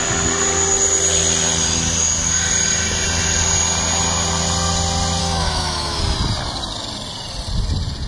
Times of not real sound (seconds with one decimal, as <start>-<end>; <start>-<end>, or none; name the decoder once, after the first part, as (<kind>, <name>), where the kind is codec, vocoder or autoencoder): 5.2-6.0 (autoencoder, DAC-VAE)